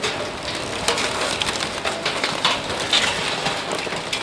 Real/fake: real